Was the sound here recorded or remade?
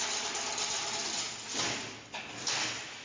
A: recorded